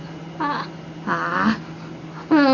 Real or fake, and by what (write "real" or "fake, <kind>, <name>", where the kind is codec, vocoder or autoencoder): real